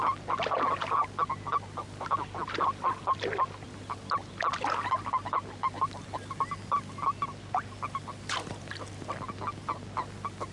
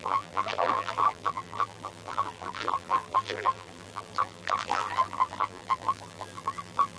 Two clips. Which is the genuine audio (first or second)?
first